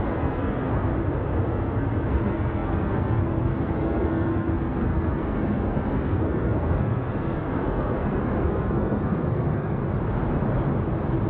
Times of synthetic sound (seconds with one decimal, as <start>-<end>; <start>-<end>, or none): 0.0-0.9; 1.5-9.8